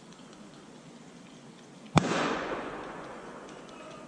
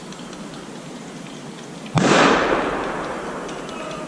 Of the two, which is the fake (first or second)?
first